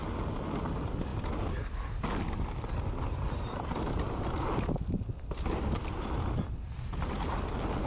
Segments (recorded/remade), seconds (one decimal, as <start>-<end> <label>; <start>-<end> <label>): 0.0-7.9 recorded